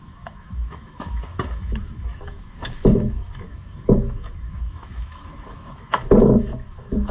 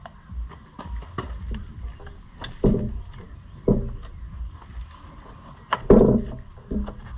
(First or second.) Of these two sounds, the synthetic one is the first